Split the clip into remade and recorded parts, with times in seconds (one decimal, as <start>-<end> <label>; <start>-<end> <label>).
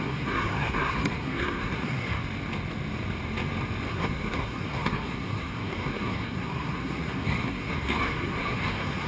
0.0-2.2 remade; 2.2-3.9 recorded; 3.9-9.1 remade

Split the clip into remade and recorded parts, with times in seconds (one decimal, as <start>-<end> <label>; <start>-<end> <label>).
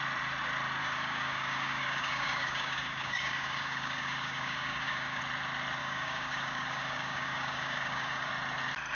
0.0-0.8 recorded; 0.8-5.2 remade; 5.2-5.8 recorded; 5.8-8.3 remade; 8.3-8.9 recorded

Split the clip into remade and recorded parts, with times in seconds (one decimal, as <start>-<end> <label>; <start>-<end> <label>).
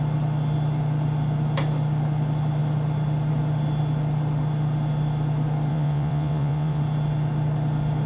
0.0-5.7 recorded; 5.7-6.8 remade; 6.8-8.1 recorded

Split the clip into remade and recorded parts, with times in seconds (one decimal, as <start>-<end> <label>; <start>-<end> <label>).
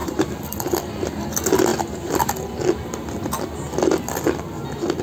0.0-0.8 remade; 0.8-5.0 recorded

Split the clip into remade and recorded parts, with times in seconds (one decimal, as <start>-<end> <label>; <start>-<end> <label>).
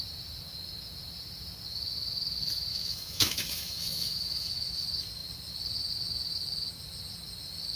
0.0-2.7 recorded; 2.7-4.7 remade; 4.7-7.8 recorded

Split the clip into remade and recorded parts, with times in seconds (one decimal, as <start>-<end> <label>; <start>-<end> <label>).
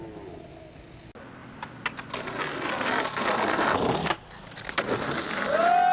0.0-5.9 recorded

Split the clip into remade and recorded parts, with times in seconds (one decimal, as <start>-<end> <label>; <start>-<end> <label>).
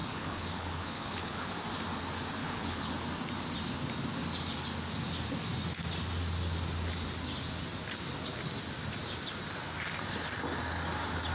0.0-1.5 remade; 1.5-2.4 recorded; 2.4-2.9 remade; 2.9-11.3 recorded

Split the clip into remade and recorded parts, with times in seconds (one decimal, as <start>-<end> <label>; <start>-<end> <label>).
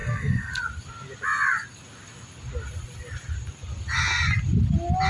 0.0-0.5 remade; 0.5-5.1 recorded